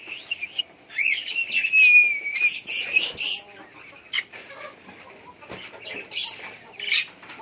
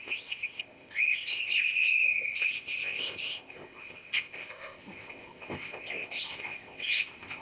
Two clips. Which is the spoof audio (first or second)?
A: second